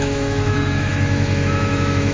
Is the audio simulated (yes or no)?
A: yes